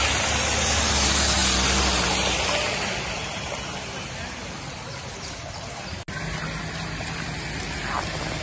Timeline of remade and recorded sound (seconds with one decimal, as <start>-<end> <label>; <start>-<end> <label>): 0.0-8.4 recorded